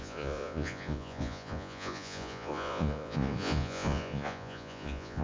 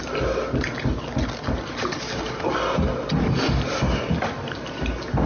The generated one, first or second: first